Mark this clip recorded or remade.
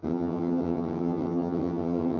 remade